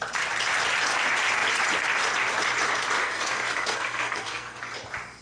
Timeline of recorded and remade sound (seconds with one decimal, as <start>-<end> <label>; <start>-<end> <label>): 0.0-3.0 recorded; 3.0-4.7 remade; 4.7-5.2 recorded